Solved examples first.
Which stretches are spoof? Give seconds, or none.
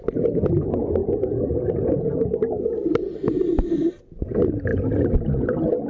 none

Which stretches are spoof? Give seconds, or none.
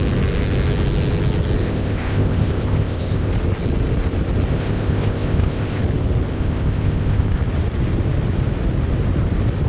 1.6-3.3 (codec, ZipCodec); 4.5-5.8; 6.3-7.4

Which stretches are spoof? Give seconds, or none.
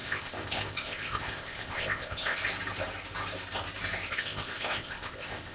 0.0-2.4 (codec, ZipCodec); 4.1-5.5